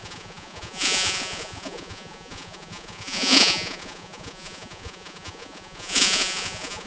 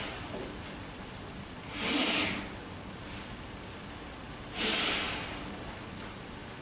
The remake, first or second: first